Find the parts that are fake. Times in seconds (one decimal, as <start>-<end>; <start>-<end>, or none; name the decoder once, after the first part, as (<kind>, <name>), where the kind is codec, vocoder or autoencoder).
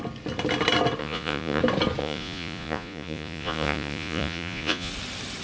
1.0-1.6 (vocoder, Vocos); 2.0-4.9